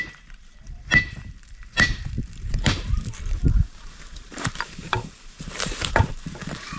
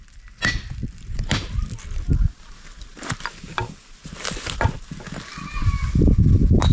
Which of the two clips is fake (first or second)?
first